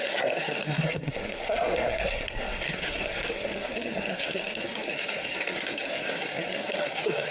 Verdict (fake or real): fake